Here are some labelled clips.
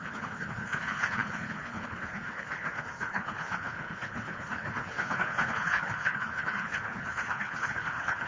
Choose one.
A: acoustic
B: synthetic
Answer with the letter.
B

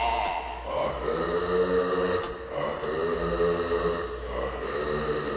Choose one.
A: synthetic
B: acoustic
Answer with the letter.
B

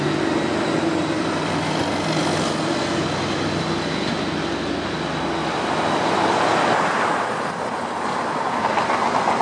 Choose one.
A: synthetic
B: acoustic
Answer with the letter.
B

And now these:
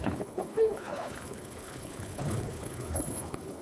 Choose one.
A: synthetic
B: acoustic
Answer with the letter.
A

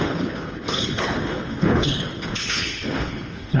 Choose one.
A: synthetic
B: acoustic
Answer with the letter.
A